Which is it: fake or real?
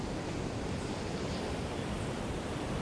fake